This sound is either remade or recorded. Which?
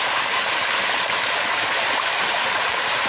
remade